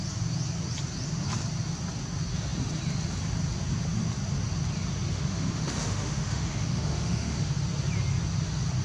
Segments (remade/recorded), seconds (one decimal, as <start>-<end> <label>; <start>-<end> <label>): 0.0-5.1 recorded; 5.1-7.5 remade; 7.5-8.8 recorded